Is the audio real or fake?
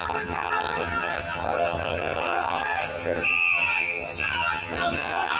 fake